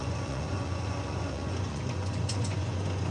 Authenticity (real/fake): fake